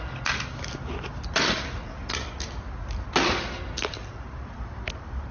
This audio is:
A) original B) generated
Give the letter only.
A